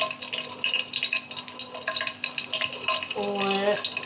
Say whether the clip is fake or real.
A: real